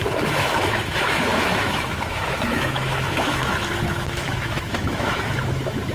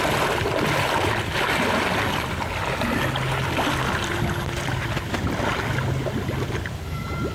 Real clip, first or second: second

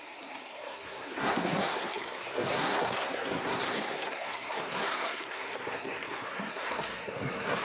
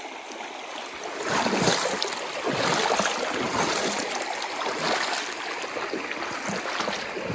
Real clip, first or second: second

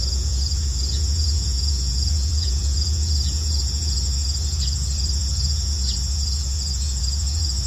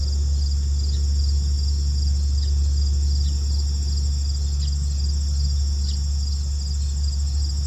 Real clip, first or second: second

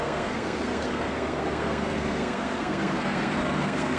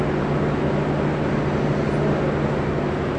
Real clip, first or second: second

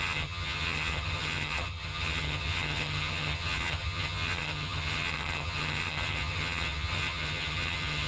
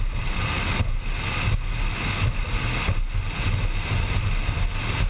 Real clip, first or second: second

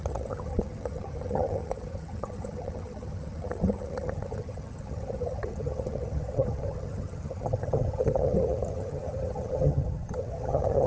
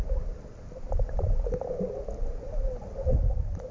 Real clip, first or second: second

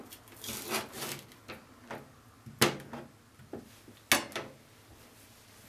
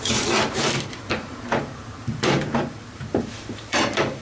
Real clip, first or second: first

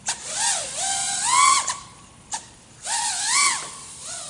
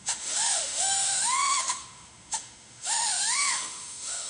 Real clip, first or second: first